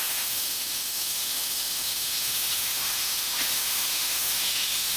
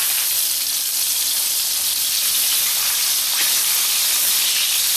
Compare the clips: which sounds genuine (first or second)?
second